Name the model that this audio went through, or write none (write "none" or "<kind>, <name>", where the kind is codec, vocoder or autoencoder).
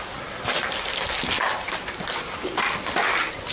none